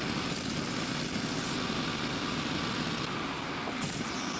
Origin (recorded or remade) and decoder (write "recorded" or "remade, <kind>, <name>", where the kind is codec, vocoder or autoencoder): recorded